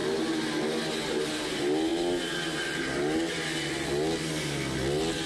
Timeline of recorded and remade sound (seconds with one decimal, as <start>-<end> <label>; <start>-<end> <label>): 0.0-5.3 recorded